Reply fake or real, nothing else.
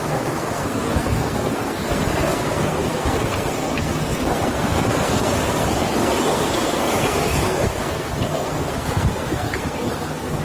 fake